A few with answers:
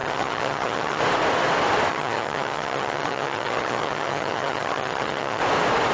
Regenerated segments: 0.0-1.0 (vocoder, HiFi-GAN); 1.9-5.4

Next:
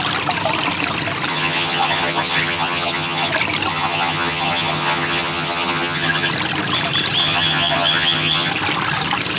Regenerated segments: 1.3-3.3 (vocoder, HiFi-GAN); 3.7-6.3; 7.2-8.5

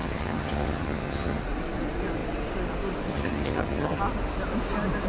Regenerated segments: 0.0-1.4 (vocoder, HiFi-GAN); 3.1-4.0

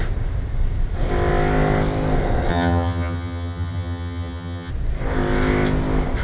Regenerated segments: 2.5-4.7 (vocoder, HiFi-GAN)

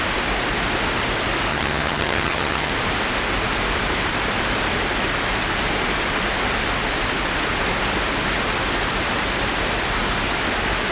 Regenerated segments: 1.5-2.7 (vocoder, HiFi-GAN)